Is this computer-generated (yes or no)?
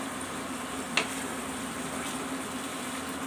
no